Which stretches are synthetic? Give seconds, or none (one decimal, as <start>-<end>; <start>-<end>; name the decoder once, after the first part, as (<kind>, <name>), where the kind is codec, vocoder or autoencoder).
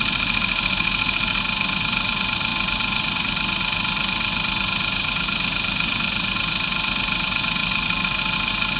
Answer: none